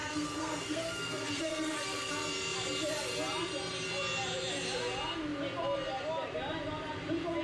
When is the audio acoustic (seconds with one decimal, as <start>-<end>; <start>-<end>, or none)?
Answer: 2.1-7.4